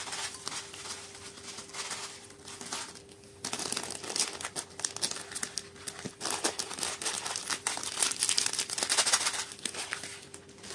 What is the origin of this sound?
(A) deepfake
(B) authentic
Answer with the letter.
B